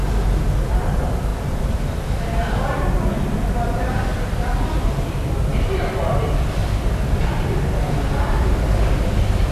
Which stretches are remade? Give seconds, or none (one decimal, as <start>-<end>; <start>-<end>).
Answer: 0.7-6.6; 7.1-9.5